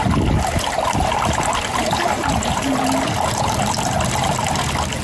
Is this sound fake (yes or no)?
no